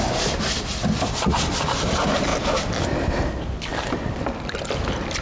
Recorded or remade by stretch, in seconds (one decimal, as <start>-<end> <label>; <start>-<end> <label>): 0.0-5.2 recorded